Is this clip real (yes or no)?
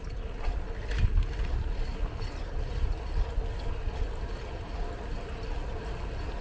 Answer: yes